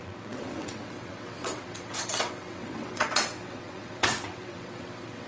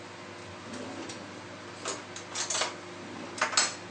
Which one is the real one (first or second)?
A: second